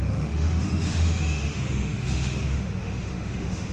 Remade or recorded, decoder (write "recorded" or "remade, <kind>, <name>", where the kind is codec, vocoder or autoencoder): remade, autoencoder, DAC-VAE